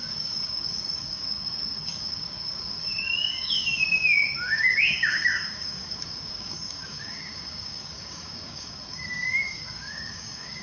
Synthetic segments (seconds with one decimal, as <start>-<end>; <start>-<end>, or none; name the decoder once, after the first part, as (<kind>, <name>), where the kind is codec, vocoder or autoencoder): 0.0-10.6 (codec, DAC)